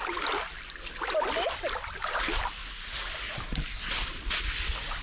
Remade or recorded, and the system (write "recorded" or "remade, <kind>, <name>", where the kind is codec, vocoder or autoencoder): recorded